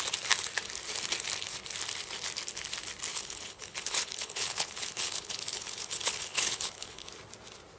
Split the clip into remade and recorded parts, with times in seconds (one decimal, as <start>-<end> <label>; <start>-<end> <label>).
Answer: 0.0-3.1 recorded; 3.1-7.1 remade; 7.1-7.8 recorded